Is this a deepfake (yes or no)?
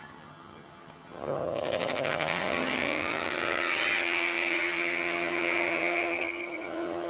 yes